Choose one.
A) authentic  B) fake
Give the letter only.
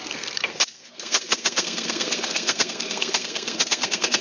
B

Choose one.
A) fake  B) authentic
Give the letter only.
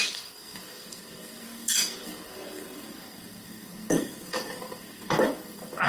A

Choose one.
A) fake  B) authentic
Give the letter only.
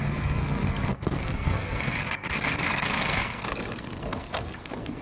A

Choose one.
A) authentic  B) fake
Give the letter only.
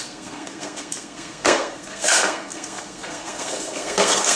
B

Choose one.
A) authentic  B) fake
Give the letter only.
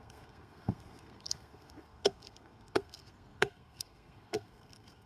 B